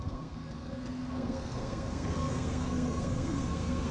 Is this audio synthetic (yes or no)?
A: yes